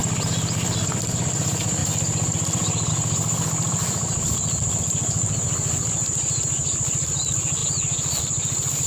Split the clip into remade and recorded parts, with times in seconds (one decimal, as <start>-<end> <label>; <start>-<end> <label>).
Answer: 0.0-7.6 remade; 7.6-8.2 recorded; 8.2-8.9 remade